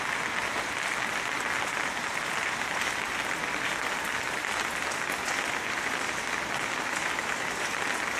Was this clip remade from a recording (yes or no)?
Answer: no